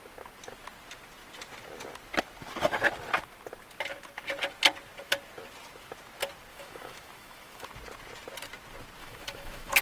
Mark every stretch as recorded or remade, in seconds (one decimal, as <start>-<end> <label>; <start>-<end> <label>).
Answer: 0.0-6.5 recorded; 6.5-7.7 remade; 7.7-9.0 recorded; 9.0-9.8 remade